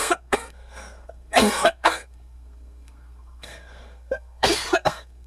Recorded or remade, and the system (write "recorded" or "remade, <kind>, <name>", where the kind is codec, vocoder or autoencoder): remade, codec, SNAC